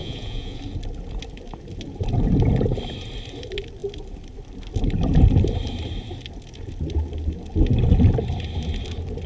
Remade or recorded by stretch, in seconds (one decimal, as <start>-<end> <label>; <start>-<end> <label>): 0.0-0.6 remade; 0.6-9.3 recorded